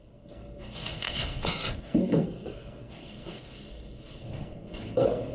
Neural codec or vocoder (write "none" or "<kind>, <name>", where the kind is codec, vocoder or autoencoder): codec, SNAC